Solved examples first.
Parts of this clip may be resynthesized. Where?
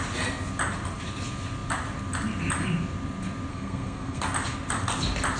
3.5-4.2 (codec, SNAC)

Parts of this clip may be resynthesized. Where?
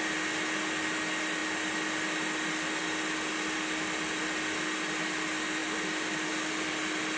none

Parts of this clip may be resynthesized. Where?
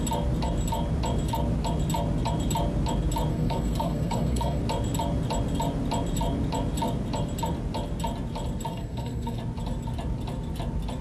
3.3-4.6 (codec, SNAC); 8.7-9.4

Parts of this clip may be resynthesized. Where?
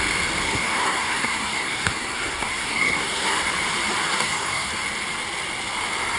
0.4-3.4 (codec, SNAC); 4.0-4.7